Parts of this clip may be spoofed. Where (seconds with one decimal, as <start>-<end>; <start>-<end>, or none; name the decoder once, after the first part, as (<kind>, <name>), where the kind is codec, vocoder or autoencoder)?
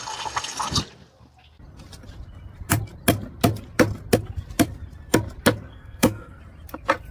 5.7-6.4 (codec, SNAC)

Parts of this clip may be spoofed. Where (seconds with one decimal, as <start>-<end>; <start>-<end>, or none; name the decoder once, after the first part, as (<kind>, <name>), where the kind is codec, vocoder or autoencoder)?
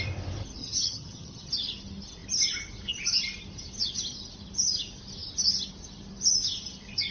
0.6-1.5 (vocoder, HiFi-GAN)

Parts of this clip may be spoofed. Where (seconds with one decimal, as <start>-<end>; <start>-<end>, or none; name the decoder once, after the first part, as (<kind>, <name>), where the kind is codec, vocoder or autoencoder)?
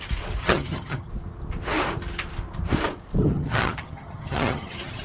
0.4-1.1 (vocoder, HiFi-GAN); 3.2-5.0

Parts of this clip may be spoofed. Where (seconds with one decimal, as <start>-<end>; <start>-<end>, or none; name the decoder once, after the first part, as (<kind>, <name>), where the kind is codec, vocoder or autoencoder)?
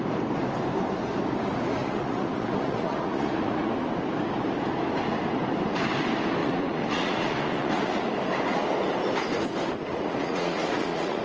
1.8-3.7 (vocoder, Vocos); 6.4-8.1; 9.9-11.2